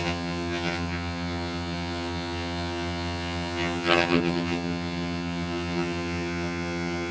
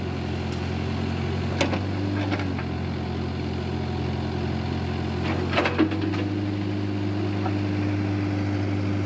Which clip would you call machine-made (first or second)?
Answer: first